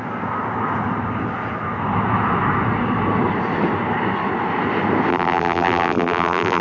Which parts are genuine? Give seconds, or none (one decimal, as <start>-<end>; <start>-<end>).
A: 0.0-5.1